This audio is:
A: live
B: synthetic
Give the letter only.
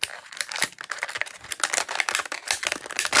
A